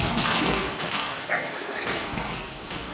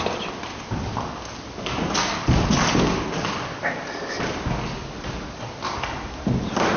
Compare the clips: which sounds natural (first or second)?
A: second